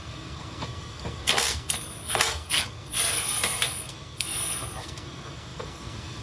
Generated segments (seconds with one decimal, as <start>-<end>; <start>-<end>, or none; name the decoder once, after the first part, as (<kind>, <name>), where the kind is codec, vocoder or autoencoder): 0.0-6.2 (codec, SNAC)